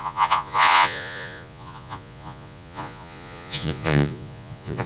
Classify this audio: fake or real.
fake